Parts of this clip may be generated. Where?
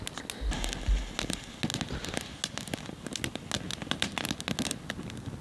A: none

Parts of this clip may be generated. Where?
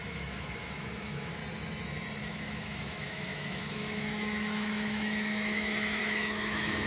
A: 0.0-1.4 (autoencoder, DAC-VAE); 2.2-6.9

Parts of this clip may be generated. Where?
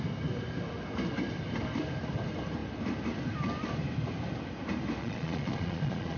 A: 5.0-6.2 (vocoder, Vocos)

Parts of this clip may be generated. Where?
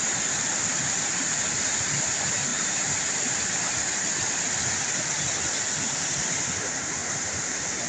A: 2.5-3.2 (vocoder, BigVGAN v2); 7.0-7.9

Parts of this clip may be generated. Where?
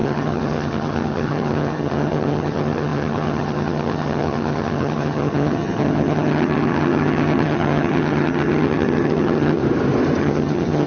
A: 0.0-9.6 (vocoder, HiFi-GAN); 10.2-10.9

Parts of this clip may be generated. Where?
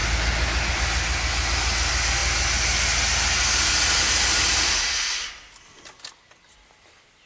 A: none